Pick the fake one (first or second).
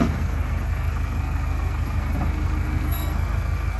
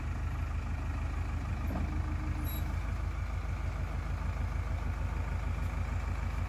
first